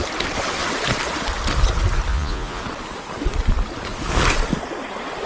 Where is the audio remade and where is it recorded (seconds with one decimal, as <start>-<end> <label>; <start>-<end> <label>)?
0.0-2.1 recorded; 2.1-2.6 remade; 2.6-5.3 recorded